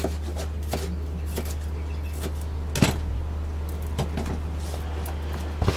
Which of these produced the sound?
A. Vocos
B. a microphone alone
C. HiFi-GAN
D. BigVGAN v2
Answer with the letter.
B